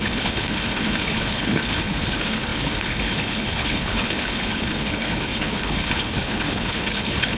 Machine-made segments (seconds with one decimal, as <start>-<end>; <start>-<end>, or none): 0.0-7.4